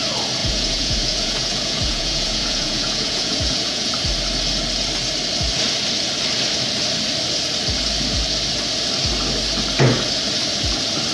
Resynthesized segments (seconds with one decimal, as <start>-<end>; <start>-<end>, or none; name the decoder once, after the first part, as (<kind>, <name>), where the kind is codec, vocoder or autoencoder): 0.4-3.9 (vocoder, Vocos)